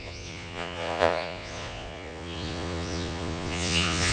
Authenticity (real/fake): fake